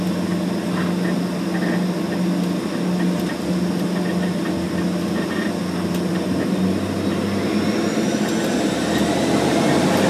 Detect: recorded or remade recorded